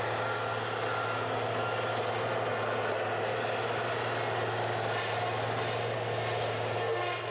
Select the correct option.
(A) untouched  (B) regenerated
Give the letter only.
A